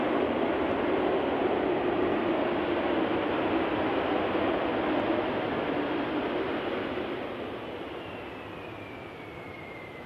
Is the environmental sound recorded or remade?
recorded